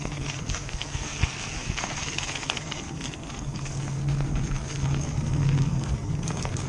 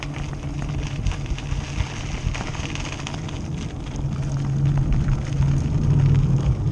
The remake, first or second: first